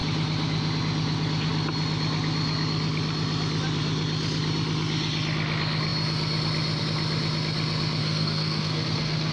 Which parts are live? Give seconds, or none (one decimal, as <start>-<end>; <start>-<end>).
0.0-8.0